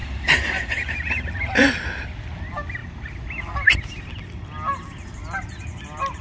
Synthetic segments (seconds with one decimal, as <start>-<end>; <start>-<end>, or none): 0.0-1.8